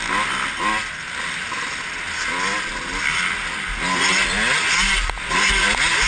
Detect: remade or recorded recorded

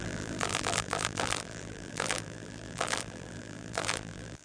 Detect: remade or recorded remade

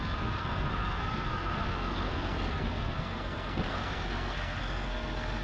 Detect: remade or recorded remade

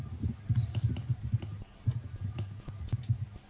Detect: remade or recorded recorded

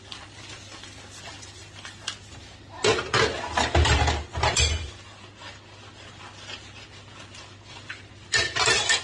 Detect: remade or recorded recorded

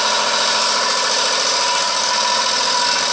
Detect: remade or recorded recorded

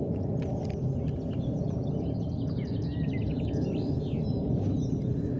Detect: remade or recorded recorded